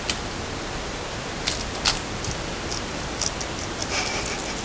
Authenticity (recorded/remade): recorded